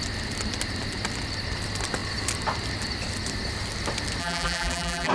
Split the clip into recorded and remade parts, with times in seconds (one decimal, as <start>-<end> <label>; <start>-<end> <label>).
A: 0.0-4.2 recorded; 4.2-5.1 remade